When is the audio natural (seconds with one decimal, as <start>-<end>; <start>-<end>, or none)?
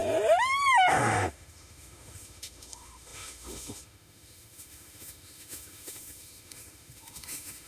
0.0-0.9